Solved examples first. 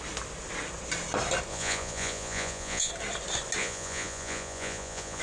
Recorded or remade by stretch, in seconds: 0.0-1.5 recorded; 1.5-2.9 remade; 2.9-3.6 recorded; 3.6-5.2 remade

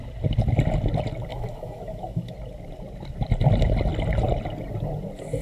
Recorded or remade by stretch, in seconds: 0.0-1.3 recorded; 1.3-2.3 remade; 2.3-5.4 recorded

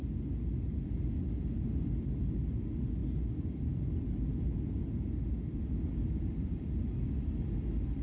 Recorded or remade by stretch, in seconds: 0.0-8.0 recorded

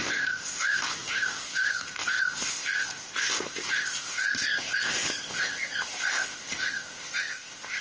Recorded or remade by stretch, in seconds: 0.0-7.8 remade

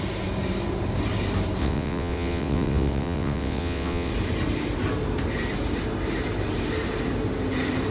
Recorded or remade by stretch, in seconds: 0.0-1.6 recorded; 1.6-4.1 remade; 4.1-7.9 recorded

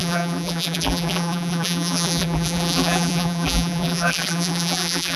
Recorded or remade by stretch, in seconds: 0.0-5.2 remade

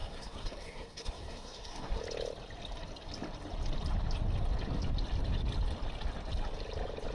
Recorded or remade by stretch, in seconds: 0.0-2.0 remade; 2.0-7.1 recorded

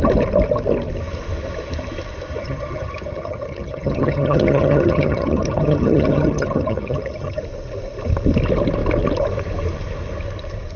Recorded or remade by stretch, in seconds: 0.0-2.3 recorded; 2.3-7.4 remade; 7.4-10.8 recorded